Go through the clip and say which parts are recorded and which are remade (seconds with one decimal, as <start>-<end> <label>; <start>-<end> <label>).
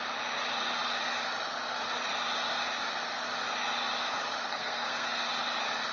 0.0-4.5 recorded; 4.5-5.3 remade; 5.3-5.9 recorded